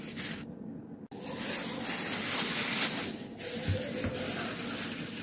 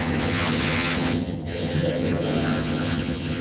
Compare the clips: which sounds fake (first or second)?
second